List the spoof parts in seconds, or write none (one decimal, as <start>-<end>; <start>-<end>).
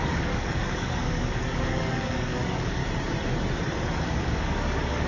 0.0-2.8; 4.0-5.1